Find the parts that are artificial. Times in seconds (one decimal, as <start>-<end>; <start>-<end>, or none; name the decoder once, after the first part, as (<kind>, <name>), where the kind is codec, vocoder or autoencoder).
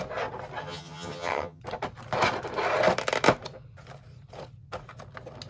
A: 0.6-1.6 (vocoder, HiFi-GAN)